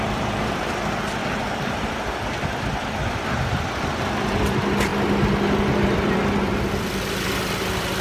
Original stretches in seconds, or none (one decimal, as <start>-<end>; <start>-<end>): 4.9-5.6